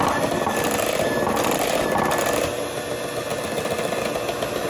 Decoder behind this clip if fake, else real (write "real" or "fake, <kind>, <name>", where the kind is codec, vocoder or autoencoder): real